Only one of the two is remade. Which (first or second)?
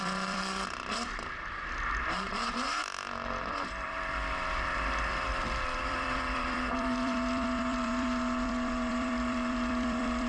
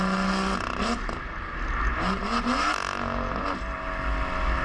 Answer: first